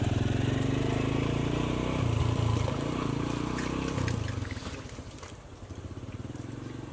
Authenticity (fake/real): real